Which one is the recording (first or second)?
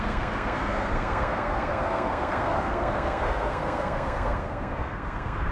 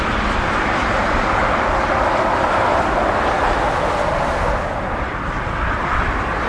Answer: second